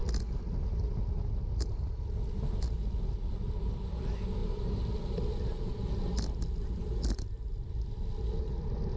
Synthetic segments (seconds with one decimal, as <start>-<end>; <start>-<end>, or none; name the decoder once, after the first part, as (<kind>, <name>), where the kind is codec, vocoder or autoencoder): none